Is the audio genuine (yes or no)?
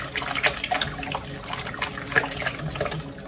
yes